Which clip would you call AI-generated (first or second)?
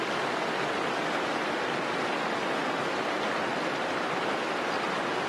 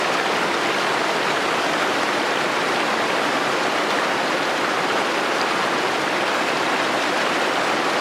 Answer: second